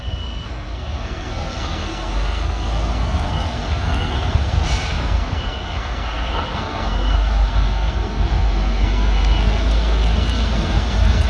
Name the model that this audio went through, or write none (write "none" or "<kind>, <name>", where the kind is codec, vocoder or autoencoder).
codec, SNAC